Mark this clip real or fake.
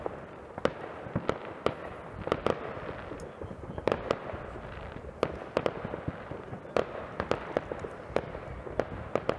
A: real